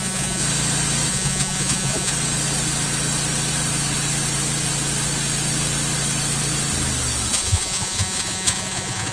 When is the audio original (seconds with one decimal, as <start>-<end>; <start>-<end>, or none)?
0.4-1.1; 2.1-7.3

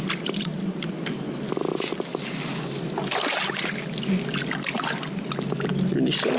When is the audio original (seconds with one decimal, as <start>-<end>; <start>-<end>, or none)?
0.0-6.4

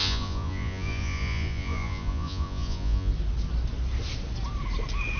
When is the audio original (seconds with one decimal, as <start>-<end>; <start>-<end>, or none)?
3.1-5.2

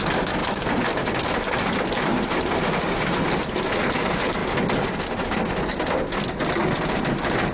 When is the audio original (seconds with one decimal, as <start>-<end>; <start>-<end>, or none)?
0.0-2.6; 3.1-7.5

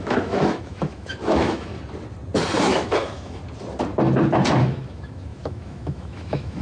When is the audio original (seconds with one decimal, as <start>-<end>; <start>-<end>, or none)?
1.7-2.6; 3.4-4.6